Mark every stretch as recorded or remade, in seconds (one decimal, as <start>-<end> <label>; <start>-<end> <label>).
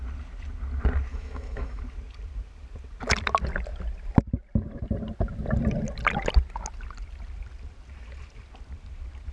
0.0-1.1 recorded; 1.1-1.8 remade; 1.8-9.3 recorded